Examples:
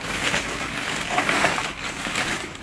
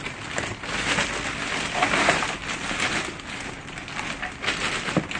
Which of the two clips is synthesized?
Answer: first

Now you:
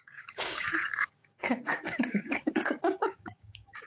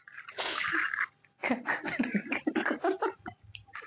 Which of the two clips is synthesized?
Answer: first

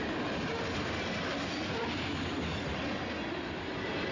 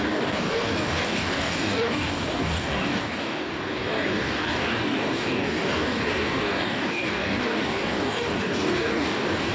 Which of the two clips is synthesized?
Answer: second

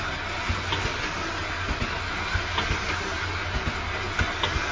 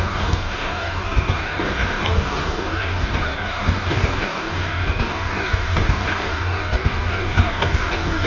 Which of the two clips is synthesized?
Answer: second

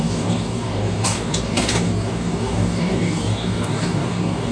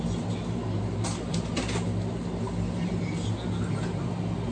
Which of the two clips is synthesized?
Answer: first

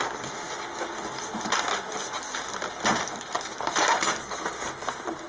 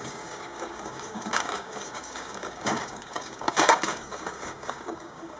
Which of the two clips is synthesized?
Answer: second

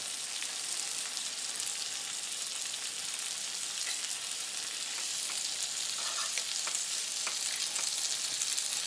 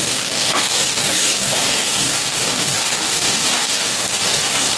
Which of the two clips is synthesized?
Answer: second